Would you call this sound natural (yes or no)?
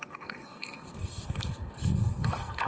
no